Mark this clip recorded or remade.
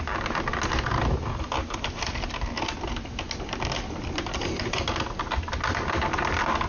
recorded